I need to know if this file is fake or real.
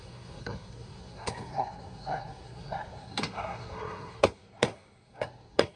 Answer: fake